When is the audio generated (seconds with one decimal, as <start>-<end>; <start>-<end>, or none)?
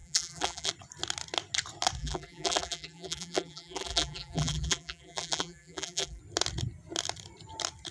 0.0-0.7; 2.0-6.2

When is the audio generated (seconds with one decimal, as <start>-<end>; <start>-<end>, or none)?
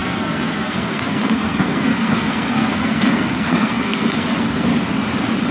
0.0-4.7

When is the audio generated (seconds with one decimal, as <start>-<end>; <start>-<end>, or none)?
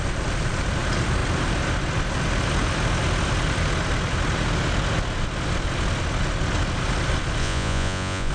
7.4-8.3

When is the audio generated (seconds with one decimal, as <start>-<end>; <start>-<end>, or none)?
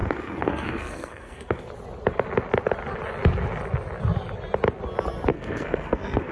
0.0-1.7; 5.3-6.3